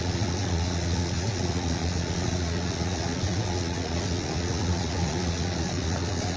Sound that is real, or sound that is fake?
fake